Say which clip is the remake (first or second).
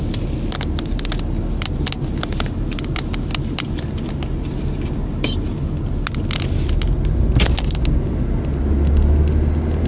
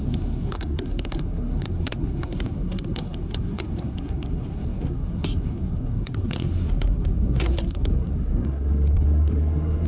second